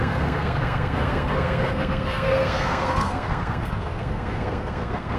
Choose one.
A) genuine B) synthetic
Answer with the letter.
B